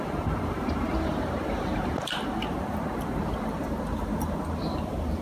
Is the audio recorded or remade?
remade